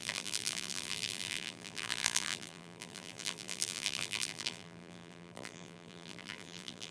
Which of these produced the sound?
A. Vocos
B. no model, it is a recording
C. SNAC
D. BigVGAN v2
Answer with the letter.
D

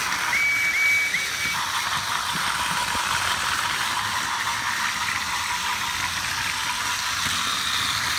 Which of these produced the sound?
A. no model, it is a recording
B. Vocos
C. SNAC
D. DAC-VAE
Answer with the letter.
A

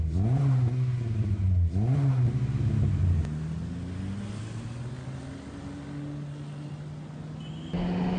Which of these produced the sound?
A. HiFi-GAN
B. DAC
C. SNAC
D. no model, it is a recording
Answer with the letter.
D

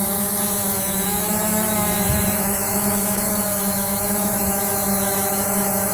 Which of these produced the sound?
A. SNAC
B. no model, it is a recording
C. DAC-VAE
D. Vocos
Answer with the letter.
C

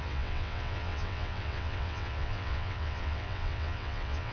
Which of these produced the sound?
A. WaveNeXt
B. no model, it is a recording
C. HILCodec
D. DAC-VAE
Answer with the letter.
A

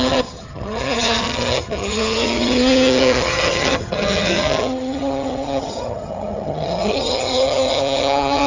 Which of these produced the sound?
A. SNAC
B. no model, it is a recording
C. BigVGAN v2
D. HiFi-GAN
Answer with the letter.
D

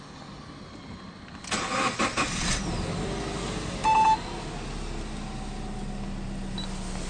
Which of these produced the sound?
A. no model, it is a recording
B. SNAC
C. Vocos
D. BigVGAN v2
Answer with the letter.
A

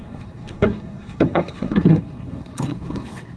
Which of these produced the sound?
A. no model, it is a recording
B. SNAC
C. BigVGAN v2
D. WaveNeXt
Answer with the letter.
B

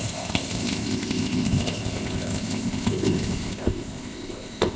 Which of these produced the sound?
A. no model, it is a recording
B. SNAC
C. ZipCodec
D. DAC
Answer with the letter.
C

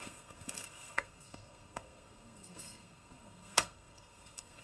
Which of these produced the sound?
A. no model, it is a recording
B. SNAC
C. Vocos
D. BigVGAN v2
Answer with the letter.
B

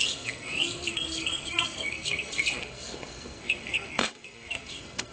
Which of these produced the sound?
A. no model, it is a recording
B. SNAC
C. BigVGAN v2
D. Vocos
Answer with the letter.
B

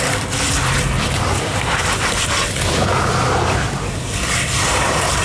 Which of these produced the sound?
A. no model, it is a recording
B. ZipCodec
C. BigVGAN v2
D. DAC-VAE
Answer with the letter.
C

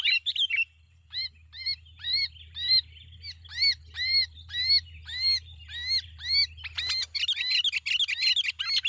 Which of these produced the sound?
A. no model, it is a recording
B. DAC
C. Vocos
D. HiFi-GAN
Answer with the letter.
A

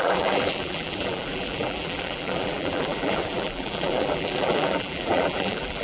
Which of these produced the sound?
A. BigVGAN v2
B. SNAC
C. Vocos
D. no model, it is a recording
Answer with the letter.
A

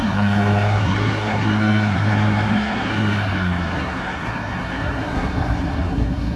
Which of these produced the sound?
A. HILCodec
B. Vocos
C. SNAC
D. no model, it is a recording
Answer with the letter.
C